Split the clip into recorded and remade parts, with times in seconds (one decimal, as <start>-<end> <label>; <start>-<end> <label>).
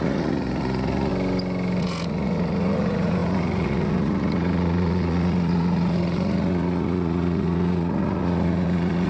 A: 0.0-1.1 remade; 1.1-1.8 recorded; 1.8-9.1 remade